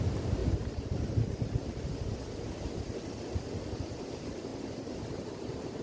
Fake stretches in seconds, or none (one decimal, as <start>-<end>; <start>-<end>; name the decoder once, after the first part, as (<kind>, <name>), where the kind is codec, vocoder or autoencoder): 0.0-0.4 (vocoder, BigVGAN v2); 3.9-4.5